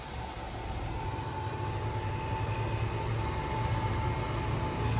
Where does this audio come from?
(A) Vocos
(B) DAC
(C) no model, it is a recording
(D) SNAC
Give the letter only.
C